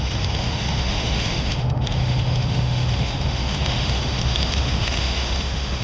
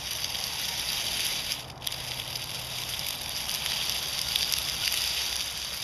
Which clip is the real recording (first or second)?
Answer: second